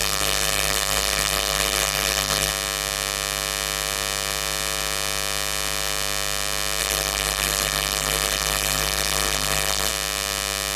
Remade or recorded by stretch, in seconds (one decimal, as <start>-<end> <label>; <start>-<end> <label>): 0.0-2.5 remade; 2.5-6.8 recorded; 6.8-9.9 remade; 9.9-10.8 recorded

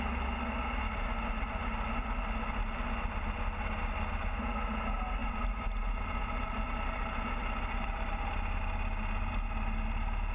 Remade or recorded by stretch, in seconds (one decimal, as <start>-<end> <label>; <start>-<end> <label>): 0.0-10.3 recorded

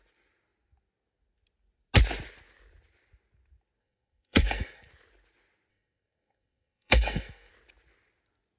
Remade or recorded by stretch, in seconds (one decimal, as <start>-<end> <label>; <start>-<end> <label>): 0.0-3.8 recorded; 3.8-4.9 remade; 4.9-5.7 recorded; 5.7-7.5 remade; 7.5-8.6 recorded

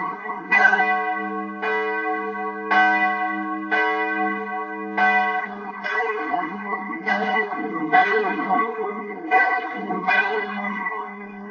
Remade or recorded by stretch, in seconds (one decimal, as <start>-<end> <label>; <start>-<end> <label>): 0.0-0.8 remade; 0.8-5.4 recorded; 5.4-11.5 remade

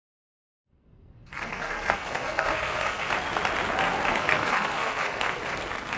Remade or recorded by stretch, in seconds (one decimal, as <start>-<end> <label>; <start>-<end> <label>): 0.0-3.1 remade; 3.1-4.1 recorded; 4.1-5.4 remade; 5.4-6.0 recorded

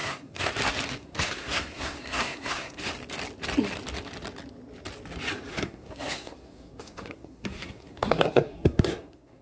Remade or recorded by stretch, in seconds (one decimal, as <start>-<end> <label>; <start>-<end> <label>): 0.0-0.5 remade; 0.5-1.0 recorded; 1.0-2.9 remade; 2.9-5.5 recorded; 5.5-9.4 remade

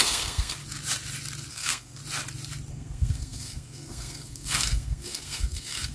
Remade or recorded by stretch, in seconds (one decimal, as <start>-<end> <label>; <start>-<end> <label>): 0.0-0.6 remade; 0.6-1.5 recorded; 1.5-2.0 remade; 2.0-2.7 recorded; 2.7-5.9 remade

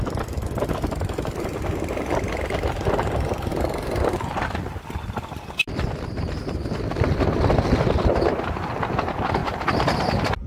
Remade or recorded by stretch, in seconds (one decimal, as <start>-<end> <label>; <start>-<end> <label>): 0.0-10.5 recorded